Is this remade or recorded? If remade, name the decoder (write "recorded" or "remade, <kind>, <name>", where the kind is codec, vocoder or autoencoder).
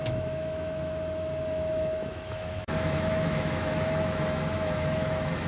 remade, autoencoder, DAC-VAE